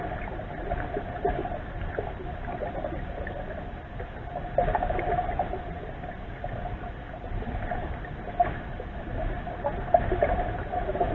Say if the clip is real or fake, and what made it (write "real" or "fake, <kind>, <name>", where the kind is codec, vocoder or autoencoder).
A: real